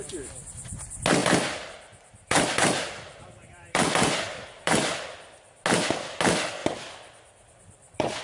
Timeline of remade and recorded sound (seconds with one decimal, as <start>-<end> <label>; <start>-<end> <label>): 0.0-1.2 recorded; 1.2-5.0 remade; 5.0-6.6 recorded; 6.6-8.2 remade